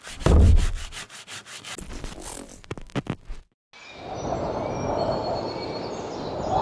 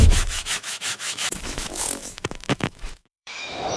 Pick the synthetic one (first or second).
second